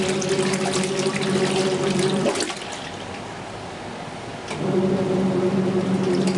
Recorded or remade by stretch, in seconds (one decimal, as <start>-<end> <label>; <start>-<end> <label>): 0.0-6.4 recorded